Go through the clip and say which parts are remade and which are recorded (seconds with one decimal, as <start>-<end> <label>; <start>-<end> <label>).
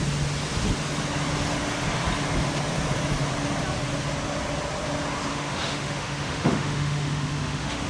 0.0-5.3 recorded; 5.3-7.9 remade